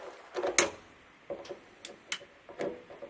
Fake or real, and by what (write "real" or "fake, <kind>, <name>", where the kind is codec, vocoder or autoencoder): real